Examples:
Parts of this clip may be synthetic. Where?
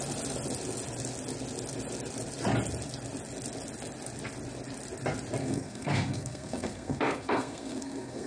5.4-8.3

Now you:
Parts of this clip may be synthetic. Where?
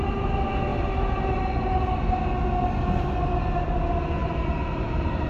0.7-1.3; 4.2-5.3